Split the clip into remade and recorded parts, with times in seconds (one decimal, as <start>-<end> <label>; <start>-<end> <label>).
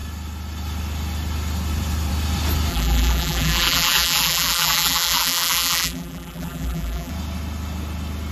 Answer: 0.0-2.7 recorded; 2.7-7.1 remade; 7.1-8.3 recorded